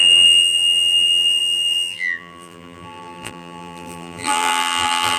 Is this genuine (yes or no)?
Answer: no